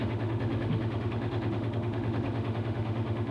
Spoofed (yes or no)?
yes